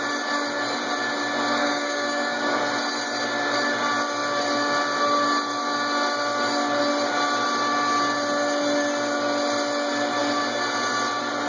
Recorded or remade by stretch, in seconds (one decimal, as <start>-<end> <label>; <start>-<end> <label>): 0.0-1.6 recorded; 1.6-2.6 remade; 2.6-11.5 recorded